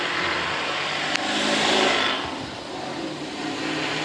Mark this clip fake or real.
real